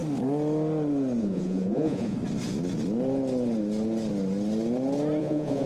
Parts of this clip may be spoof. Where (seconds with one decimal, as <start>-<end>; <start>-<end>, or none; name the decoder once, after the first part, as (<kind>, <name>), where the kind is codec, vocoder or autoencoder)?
1.2-2.2 (vocoder, Vocos); 5.2-5.7